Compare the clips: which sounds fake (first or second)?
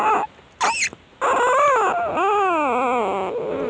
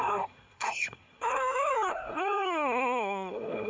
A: second